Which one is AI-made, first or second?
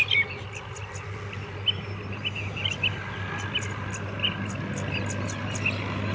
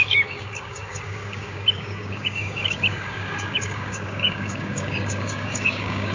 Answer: second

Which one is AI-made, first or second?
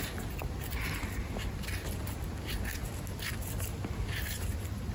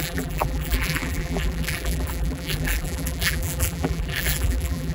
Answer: second